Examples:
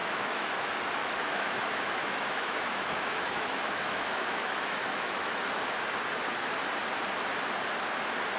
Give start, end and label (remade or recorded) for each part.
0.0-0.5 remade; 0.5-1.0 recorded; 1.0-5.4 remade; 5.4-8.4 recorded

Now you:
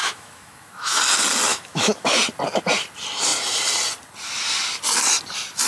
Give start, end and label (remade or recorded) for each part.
0.0-1.0 remade; 1.0-1.5 recorded; 1.5-2.1 remade; 2.1-5.7 recorded

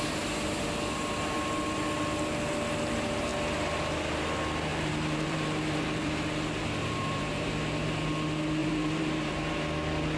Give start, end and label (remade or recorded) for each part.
0.0-4.7 recorded; 4.7-6.3 remade; 6.3-6.8 recorded; 6.8-7.5 remade; 7.5-8.6 recorded; 8.6-9.5 remade; 9.5-10.2 recorded

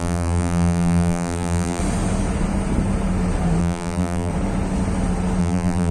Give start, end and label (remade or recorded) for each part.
0.0-1.8 remade; 1.8-3.6 recorded; 3.6-4.3 remade; 4.3-5.4 recorded; 5.4-5.9 remade

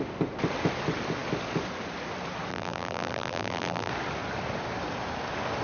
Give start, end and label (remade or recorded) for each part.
0.0-2.5 recorded; 2.5-3.9 remade; 3.9-5.6 recorded

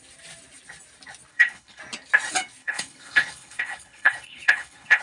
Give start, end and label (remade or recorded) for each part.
0.0-1.3 recorded; 1.3-1.8 remade; 1.8-2.6 recorded; 2.6-5.0 remade